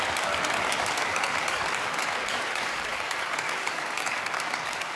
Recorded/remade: remade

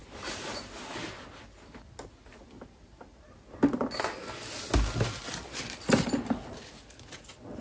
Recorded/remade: recorded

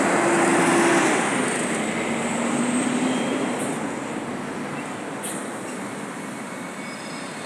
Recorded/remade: recorded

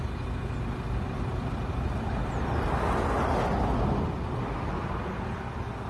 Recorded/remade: recorded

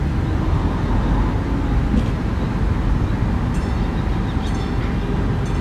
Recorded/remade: recorded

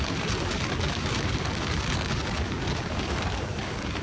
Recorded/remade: remade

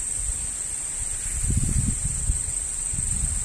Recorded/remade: recorded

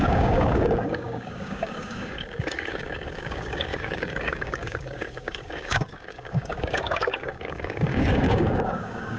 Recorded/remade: remade